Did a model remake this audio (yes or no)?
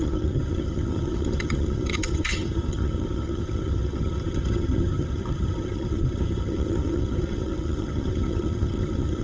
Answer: yes